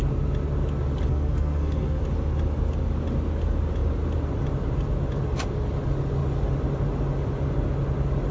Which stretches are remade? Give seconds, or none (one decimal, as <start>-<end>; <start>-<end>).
1.1-2.0